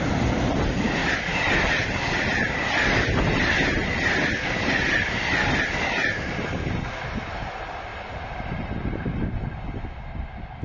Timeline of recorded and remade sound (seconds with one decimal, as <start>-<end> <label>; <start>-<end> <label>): 0.0-7.9 recorded; 7.9-9.3 remade; 9.3-10.6 recorded

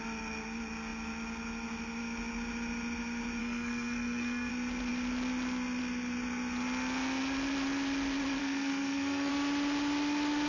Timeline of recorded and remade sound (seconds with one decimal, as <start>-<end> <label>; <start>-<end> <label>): 0.0-3.4 recorded; 3.4-4.5 remade; 4.5-8.4 recorded; 8.4-9.3 remade; 9.3-10.5 recorded

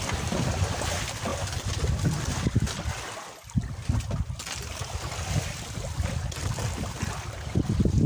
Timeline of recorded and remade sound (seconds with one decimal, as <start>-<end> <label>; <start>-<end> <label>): 0.0-8.1 recorded

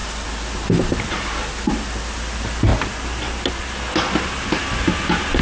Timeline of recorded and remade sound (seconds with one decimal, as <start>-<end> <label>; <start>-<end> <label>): 0.0-5.4 recorded